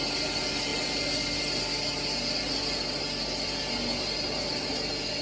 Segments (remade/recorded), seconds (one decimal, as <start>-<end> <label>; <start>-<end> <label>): 0.0-5.2 recorded